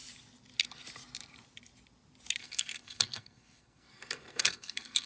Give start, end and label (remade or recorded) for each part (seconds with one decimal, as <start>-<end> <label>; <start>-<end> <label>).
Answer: 0.0-2.4 recorded; 2.4-5.1 remade